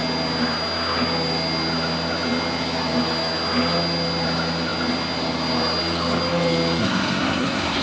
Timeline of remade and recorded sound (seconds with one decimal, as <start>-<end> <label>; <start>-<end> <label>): 0.0-6.8 recorded; 6.8-7.8 remade